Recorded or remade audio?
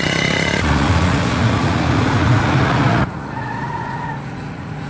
remade